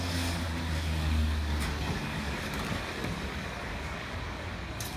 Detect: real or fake fake